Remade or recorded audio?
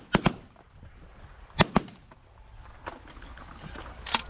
recorded